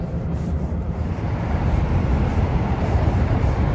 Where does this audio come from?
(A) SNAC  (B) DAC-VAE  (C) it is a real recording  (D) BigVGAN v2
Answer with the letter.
D